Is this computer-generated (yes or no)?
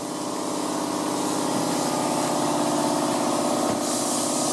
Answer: no